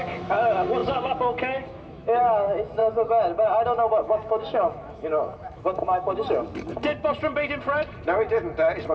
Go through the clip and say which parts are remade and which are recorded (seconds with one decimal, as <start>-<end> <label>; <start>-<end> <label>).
0.0-2.8 remade; 2.8-4.0 recorded; 4.0-6.5 remade; 6.5-8.9 recorded